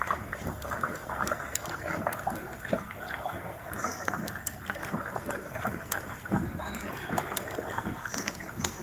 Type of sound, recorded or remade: remade